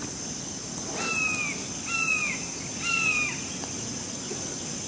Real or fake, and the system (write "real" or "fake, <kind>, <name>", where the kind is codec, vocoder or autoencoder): real